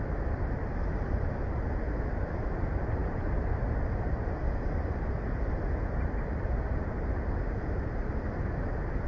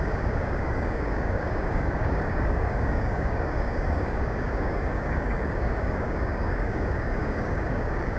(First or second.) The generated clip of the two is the second